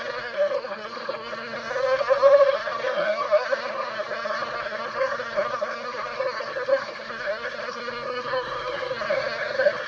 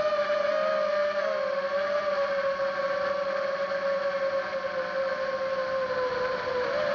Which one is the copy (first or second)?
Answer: first